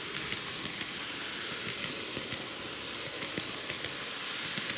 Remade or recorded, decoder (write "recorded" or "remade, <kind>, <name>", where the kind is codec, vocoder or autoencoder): recorded